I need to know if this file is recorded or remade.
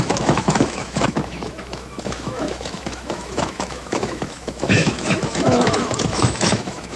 remade